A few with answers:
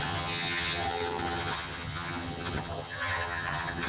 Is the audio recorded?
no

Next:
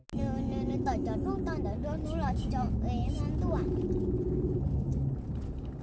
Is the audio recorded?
yes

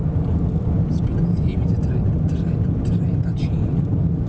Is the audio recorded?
yes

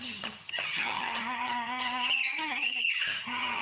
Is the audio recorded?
no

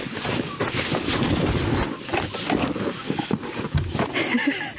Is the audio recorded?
yes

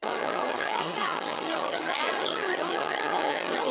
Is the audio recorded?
no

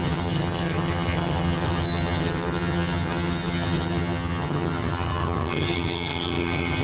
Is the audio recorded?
no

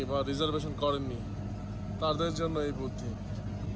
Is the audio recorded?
yes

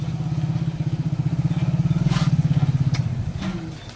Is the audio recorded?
yes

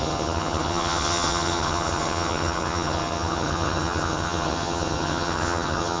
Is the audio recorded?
no